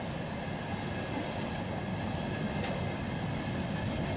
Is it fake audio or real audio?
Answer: real